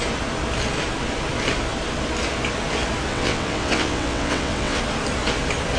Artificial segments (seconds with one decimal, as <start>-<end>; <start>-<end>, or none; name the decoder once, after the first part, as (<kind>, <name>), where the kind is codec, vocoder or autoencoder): 3.1-4.8 (vocoder, WaveNeXt)